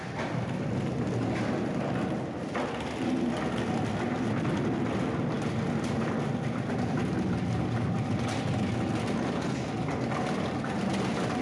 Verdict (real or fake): real